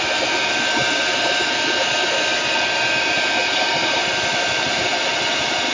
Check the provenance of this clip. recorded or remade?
recorded